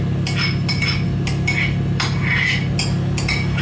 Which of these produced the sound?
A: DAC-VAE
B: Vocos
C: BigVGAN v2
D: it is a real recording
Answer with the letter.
D